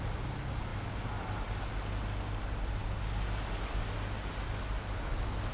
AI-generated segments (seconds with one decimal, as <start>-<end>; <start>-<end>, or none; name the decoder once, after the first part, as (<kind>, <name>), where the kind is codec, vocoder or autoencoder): none